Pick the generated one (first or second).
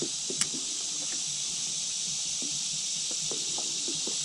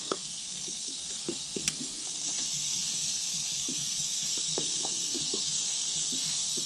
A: second